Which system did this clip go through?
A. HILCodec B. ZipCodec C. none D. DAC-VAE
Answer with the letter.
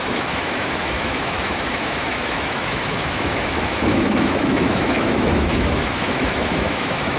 D